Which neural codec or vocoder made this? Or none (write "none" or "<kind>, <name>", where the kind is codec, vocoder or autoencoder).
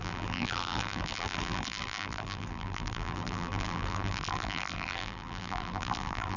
vocoder, BigVGAN v2